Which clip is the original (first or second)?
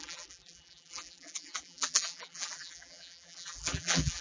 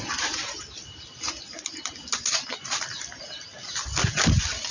second